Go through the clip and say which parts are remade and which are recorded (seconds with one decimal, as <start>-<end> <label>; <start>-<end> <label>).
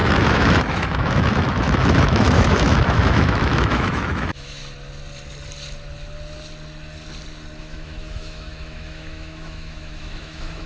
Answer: 0.0-4.6 remade; 4.6-7.6 recorded; 7.6-10.7 remade